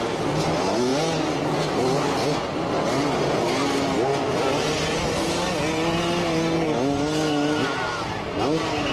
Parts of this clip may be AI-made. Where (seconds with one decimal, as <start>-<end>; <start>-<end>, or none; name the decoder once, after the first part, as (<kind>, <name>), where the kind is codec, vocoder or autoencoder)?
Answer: none